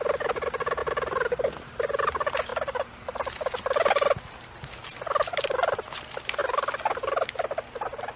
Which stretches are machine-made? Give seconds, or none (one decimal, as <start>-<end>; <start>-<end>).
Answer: none